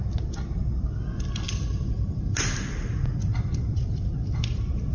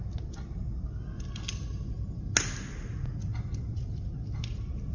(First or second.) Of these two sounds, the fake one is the first